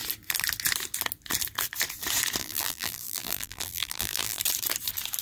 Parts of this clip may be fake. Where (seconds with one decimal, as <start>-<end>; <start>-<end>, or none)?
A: 2.4-4.4